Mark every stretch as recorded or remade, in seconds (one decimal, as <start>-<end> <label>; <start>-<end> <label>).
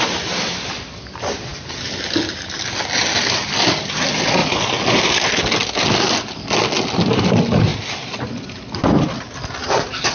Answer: 0.0-1.5 remade; 1.5-3.5 recorded; 3.5-4.4 remade; 4.4-5.4 recorded; 5.4-10.1 remade